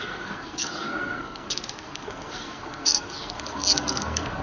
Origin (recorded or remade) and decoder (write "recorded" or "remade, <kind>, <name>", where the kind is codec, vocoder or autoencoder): remade, codec, SNAC